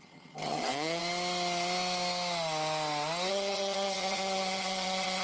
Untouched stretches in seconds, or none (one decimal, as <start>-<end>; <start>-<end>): 1.0-3.3

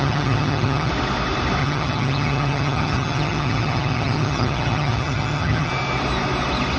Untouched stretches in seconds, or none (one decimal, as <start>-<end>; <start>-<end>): 0.9-1.6; 5.7-6.8

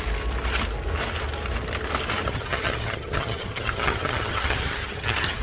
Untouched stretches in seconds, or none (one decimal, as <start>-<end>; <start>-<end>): 0.0-2.2

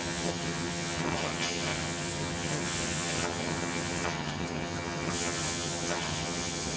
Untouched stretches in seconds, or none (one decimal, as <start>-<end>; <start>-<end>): none

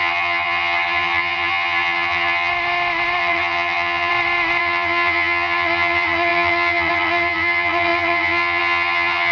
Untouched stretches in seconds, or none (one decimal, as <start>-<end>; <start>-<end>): 2.5-3.2; 4.1-4.6

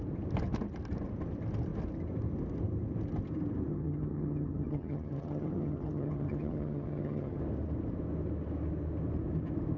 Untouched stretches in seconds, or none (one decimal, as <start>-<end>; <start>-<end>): 0.0-3.7; 7.4-9.8

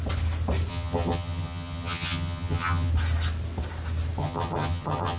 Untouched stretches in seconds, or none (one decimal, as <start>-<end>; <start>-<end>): 0.0-0.7; 2.9-4.2

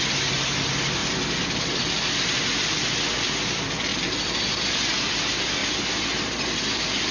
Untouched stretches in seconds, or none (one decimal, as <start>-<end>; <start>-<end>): 0.0-7.1